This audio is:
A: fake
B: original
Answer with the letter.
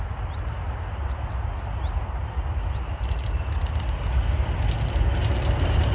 B